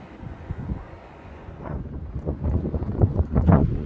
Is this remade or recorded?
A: remade